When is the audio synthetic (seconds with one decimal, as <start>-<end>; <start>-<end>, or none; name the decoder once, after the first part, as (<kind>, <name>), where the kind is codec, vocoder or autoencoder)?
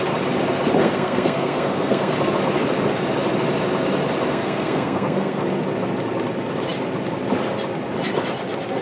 0.8-2.1 (codec, SNAC); 4.3-5.4